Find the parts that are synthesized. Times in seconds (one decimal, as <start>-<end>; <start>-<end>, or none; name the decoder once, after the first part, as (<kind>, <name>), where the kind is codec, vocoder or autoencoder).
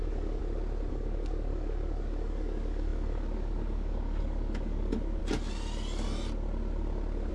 0.0-0.4 (codec, DAC); 0.9-5.2